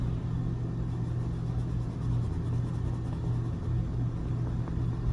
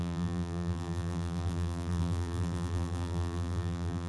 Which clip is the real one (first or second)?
first